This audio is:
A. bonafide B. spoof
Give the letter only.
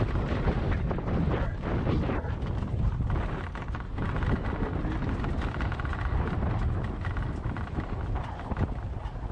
A